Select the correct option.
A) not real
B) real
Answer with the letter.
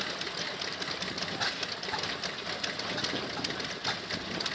B